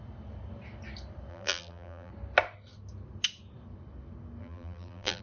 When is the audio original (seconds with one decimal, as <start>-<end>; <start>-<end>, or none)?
0.0-1.3; 2.1-4.4